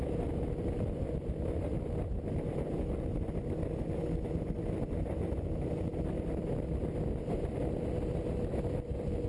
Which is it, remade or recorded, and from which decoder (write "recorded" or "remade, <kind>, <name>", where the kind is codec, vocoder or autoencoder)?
recorded